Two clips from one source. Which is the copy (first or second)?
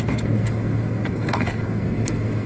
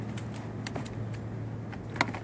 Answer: first